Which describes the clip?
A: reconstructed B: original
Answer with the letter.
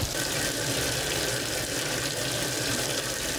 A